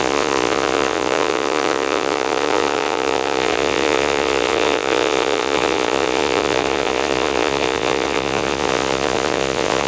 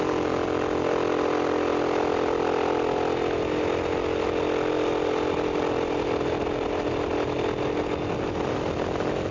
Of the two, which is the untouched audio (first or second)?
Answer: second